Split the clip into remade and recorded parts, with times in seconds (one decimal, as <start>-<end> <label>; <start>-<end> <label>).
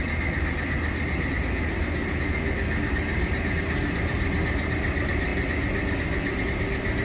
0.0-7.0 recorded